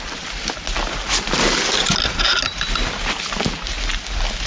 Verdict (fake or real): real